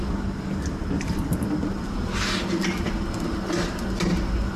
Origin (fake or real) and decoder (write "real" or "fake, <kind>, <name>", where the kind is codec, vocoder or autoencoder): real